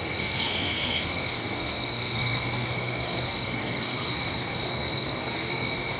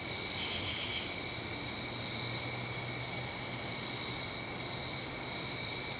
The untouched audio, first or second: second